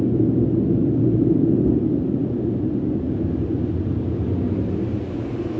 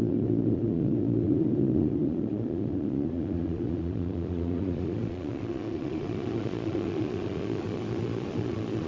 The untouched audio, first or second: first